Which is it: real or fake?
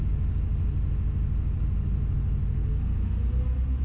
real